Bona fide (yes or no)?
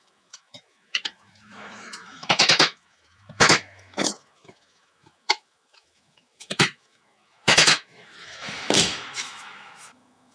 no